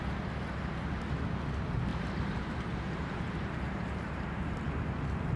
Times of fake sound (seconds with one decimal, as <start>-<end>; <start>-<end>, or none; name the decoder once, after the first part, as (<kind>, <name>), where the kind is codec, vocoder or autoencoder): 1.9-5.4 (vocoder, BigVGAN v2)